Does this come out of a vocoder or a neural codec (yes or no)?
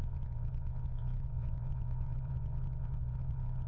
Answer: yes